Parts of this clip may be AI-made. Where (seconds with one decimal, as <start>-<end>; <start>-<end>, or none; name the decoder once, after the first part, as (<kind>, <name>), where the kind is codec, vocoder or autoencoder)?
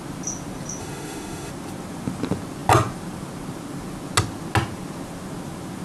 0.8-1.5 (autoencoder, DAC-VAE)